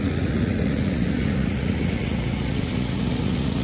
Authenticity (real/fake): fake